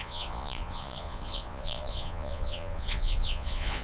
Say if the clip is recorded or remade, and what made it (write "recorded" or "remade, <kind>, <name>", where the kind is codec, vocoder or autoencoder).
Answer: remade, vocoder, Vocos